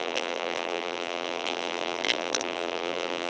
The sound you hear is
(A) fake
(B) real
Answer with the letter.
A